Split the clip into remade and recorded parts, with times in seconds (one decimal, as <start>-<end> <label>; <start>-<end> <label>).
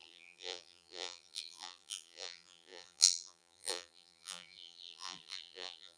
0.0-6.0 remade